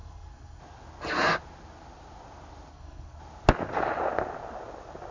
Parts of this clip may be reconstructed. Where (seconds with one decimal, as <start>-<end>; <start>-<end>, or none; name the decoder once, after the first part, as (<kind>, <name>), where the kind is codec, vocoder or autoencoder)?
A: 0.0-0.6 (codec, SNAC); 2.7-3.2